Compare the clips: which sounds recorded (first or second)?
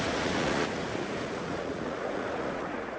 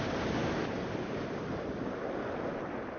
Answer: second